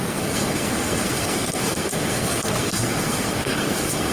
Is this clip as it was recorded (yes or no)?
no